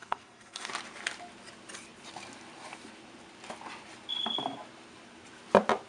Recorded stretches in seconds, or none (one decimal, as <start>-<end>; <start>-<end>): 0.7-5.9